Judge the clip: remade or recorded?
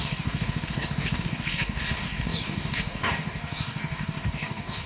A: remade